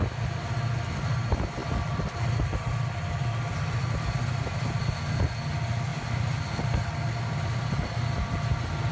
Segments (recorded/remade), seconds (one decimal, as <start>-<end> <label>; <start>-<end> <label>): 0.0-1.6 recorded; 1.6-5.0 remade; 5.0-8.9 recorded